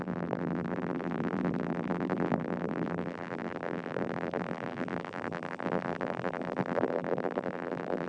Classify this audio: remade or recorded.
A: remade